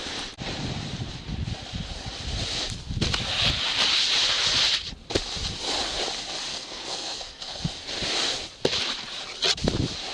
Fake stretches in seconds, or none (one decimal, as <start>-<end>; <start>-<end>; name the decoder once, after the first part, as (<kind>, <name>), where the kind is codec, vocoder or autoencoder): 6.5-7.7 (codec, SNAC)